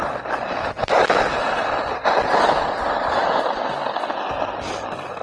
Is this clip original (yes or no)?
yes